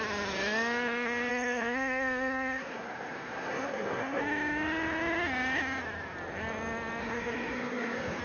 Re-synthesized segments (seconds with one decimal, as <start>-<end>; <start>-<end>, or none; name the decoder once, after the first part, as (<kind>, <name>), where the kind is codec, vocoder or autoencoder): 1.3-4.2 (codec, SNAC); 7.0-8.2